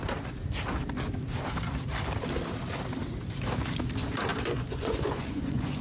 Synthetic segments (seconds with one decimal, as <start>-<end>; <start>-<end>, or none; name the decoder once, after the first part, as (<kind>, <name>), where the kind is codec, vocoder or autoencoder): 4.3-5.8 (vocoder, Vocos)